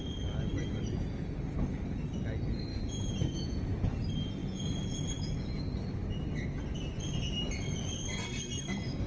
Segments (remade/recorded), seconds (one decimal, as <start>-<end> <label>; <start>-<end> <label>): 0.0-2.7 recorded; 2.7-4.0 remade; 4.0-4.4 recorded; 4.4-5.6 remade; 5.6-9.1 recorded